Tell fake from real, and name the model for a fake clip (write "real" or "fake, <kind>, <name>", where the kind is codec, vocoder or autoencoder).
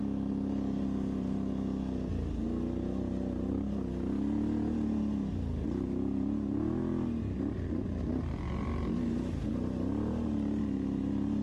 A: real